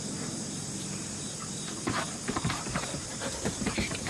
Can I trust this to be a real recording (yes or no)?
no